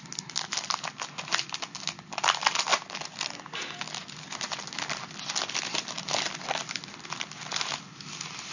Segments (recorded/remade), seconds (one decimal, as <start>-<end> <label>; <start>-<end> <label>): 0.0-8.5 recorded